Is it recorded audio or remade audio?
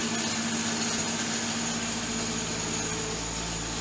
recorded